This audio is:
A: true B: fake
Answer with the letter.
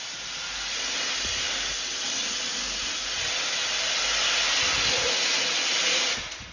A